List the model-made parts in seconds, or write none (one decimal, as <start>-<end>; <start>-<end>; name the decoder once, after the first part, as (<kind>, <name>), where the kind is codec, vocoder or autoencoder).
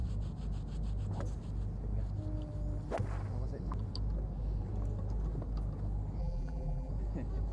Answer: 6.2-6.9 (vocoder, BigVGAN v2)